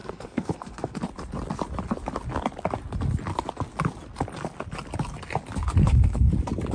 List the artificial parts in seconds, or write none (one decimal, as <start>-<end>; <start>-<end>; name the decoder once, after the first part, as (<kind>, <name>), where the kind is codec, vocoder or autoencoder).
0.0-1.0 (codec, SNAC); 5.8-6.3